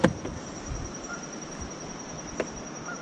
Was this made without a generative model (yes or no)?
yes